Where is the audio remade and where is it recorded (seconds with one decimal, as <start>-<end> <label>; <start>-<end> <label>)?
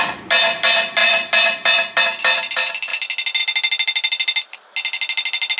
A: 0.0-5.6 recorded